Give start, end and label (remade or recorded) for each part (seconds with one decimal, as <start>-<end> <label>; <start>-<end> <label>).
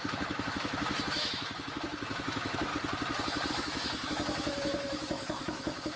0.0-2.7 remade; 2.7-3.5 recorded; 3.5-6.0 remade